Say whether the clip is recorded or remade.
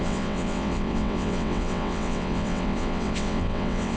remade